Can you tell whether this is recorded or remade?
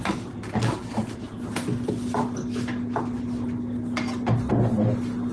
recorded